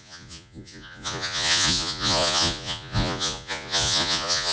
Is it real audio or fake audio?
fake